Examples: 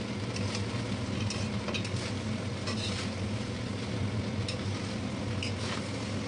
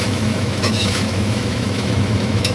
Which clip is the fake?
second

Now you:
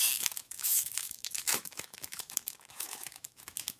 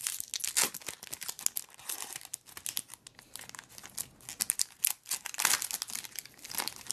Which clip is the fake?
first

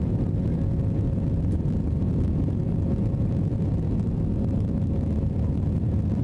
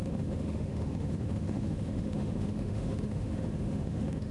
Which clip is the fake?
second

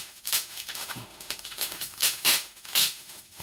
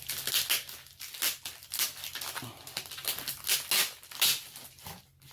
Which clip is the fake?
first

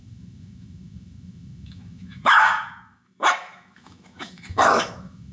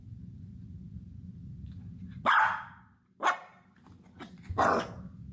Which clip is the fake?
first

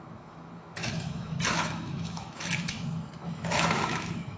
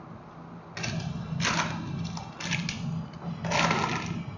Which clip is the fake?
first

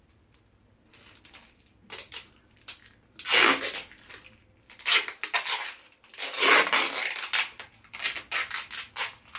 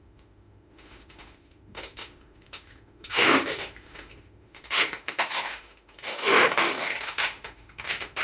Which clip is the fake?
second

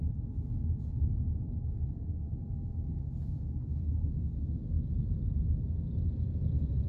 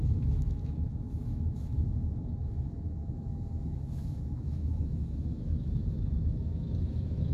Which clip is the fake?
second